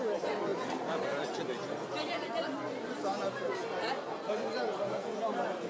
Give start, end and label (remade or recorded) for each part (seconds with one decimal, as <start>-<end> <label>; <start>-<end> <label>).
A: 0.0-5.7 recorded